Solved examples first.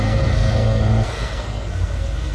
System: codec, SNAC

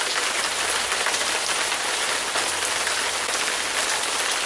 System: none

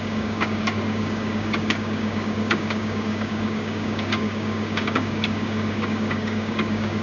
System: codec, DAC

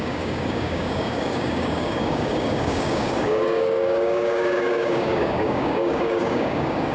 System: codec, DAC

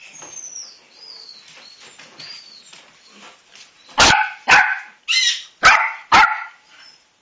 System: none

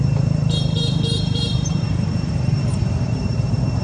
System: vocoder, BigVGAN v2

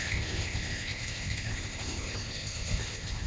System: codec, ZipCodec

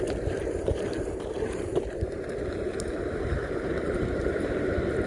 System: vocoder, BigVGAN v2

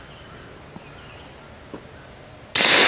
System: none